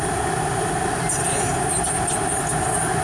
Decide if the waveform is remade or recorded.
recorded